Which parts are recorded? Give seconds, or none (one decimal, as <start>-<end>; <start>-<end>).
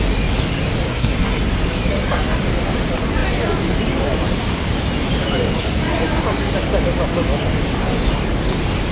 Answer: 0.0-0.9; 1.4-8.9